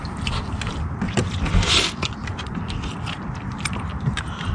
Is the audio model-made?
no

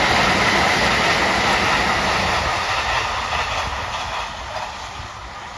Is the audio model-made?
no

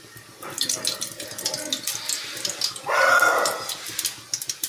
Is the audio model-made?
no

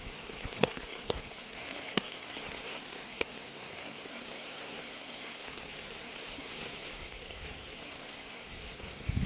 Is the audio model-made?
yes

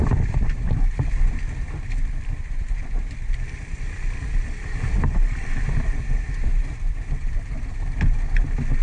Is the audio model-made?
yes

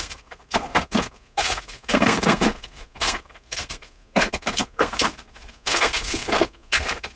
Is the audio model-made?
yes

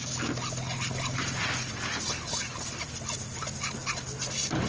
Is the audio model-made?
no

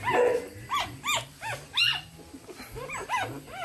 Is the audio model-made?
no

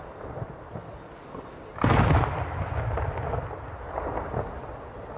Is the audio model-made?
no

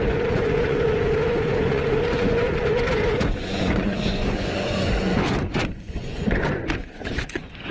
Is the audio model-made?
yes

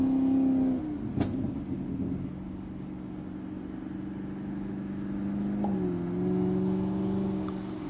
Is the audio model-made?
no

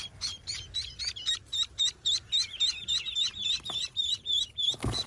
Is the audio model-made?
yes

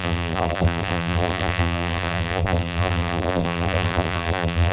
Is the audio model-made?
yes